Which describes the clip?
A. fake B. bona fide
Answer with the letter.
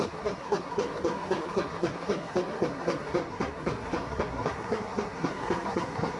A